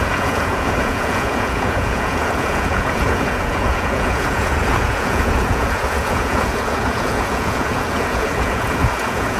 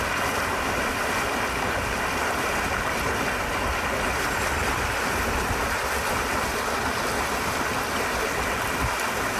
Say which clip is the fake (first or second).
first